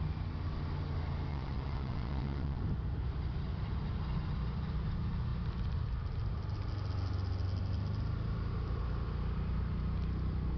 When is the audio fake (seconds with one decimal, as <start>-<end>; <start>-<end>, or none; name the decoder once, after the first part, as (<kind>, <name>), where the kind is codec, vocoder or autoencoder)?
1.3-2.6 (vocoder, WaveNeXt)